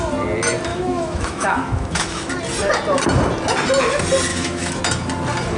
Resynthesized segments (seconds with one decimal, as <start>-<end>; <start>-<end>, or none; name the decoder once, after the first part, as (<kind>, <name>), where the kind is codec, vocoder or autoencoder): 0.7-2.3 (autoencoder, DAC-VAE); 4.3-4.8